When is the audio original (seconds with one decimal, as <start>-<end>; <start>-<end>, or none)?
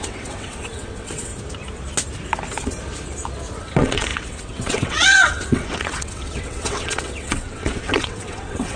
1.3-3.6